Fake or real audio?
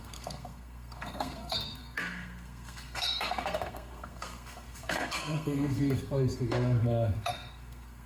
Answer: fake